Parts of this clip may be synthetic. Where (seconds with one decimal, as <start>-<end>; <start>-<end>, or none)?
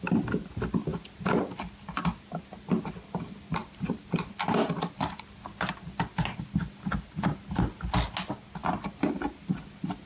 3.6-5.3; 8.6-9.2